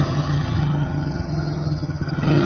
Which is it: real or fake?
fake